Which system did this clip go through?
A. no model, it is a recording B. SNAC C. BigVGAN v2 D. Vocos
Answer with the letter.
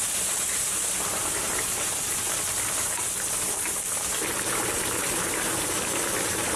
C